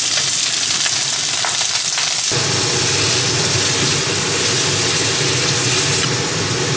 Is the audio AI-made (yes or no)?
no